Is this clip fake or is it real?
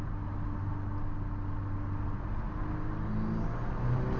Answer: real